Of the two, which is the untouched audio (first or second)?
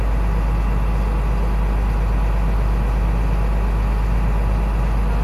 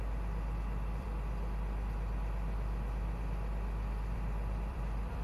first